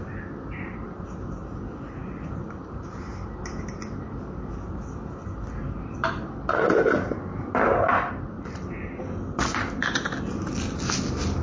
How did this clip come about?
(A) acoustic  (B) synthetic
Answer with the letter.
A